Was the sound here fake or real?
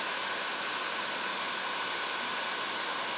real